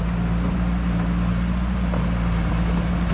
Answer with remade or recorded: recorded